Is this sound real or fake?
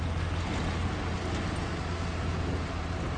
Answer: real